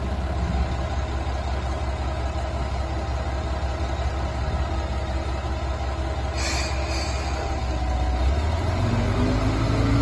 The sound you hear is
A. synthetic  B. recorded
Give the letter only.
B